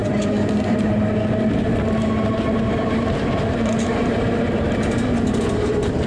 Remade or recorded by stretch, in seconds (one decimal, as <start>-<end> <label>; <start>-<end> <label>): 0.0-2.4 recorded; 2.4-6.1 remade